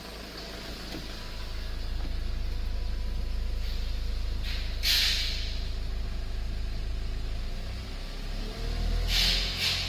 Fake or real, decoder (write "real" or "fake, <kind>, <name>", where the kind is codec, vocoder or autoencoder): real